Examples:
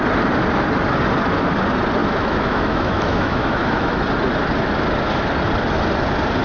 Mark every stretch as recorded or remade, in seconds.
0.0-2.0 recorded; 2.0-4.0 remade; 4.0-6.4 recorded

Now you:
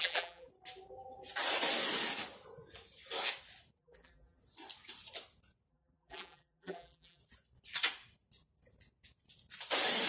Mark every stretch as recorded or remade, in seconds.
0.0-0.5 remade; 0.5-3.8 recorded; 3.8-4.4 remade; 4.4-5.7 recorded; 5.7-7.2 remade; 7.2-10.1 recorded

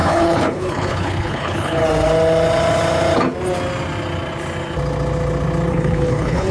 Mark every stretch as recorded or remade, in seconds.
0.0-1.8 remade; 1.8-5.7 recorded; 5.7-6.5 remade

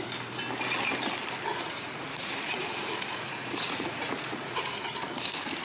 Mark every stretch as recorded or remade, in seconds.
0.0-1.5 recorded; 1.5-4.9 remade; 4.9-5.6 recorded

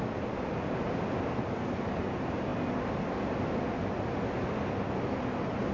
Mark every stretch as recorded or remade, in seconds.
0.0-5.7 recorded

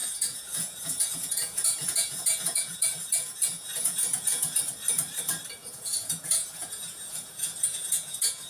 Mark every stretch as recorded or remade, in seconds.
0.0-4.6 remade; 4.6-5.6 recorded; 5.6-8.5 remade